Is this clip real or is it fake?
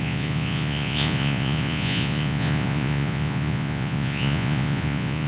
fake